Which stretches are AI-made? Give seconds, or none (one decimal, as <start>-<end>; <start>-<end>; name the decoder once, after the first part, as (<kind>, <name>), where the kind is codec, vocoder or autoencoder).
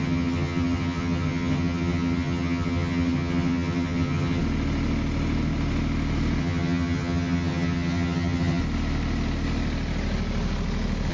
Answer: 0.0-4.4 (vocoder, HiFi-GAN); 6.4-8.6